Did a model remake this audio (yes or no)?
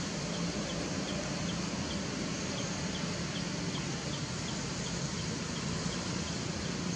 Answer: no